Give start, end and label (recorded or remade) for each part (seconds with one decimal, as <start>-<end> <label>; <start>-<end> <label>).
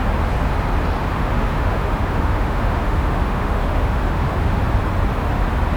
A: 0.0-1.1 recorded; 1.1-4.6 remade; 4.6-5.8 recorded